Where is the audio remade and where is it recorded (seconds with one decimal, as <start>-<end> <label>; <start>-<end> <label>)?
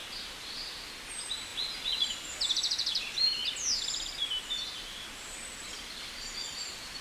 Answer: 0.0-0.9 recorded; 0.9-1.5 remade; 1.5-2.5 recorded; 2.5-3.4 remade; 3.4-4.8 recorded; 4.8-7.0 remade